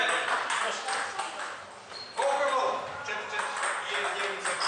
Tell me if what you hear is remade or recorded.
recorded